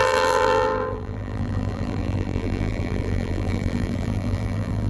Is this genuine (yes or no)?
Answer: no